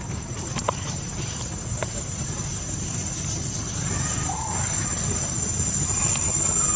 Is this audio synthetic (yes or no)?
yes